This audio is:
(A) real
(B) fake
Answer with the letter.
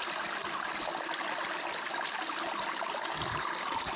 A